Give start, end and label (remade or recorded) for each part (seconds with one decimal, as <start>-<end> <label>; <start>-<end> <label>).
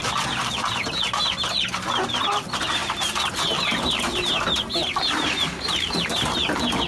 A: 0.0-2.8 recorded; 2.8-6.9 remade